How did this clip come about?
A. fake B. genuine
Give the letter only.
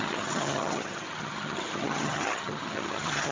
A